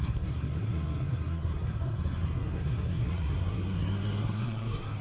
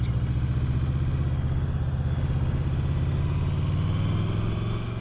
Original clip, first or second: second